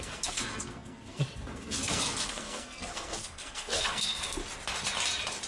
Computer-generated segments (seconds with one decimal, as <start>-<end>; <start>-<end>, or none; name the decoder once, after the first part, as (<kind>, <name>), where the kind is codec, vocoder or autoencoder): 0.0-4.4 (codec, SNAC)